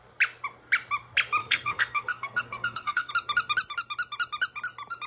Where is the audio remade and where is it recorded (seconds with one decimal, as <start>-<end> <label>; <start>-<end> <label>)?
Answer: 0.0-1.4 recorded; 1.4-3.1 remade; 3.1-5.1 recorded

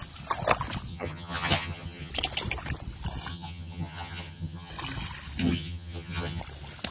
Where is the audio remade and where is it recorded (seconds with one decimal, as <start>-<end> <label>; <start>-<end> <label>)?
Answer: 0.0-0.9 recorded; 0.9-2.1 remade; 2.1-3.3 recorded; 3.3-4.7 remade; 4.7-5.4 recorded; 5.4-6.4 remade; 6.4-6.9 recorded